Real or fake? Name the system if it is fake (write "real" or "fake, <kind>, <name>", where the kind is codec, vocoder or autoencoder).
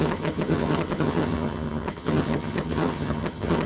fake, vocoder, HiFi-GAN